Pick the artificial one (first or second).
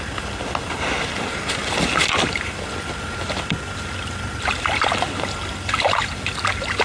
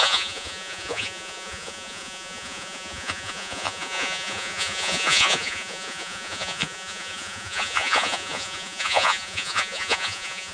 second